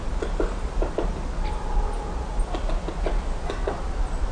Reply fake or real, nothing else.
real